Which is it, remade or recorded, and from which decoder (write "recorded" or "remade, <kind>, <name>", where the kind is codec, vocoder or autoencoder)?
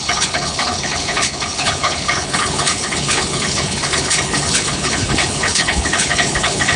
remade, codec, HILCodec